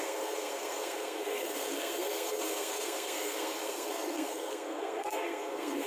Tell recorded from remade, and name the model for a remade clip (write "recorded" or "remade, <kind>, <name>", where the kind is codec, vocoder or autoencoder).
remade, codec, SNAC